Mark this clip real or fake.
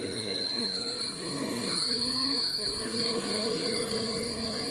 fake